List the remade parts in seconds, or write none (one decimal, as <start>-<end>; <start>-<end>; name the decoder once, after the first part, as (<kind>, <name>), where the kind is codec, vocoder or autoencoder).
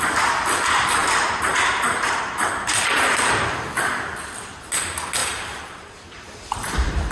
1.0-3.3 (vocoder, BigVGAN v2); 5.2-7.1